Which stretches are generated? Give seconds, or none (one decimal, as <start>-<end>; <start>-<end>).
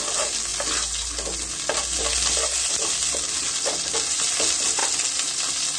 none